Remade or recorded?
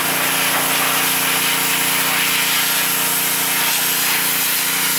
recorded